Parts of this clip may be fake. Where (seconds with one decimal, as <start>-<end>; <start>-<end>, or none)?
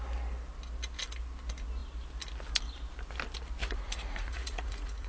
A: 3.6-5.1